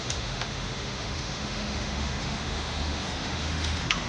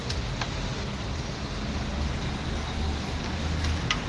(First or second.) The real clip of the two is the second